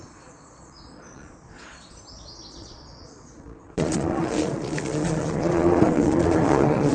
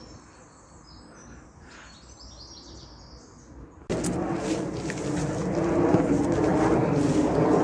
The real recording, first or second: second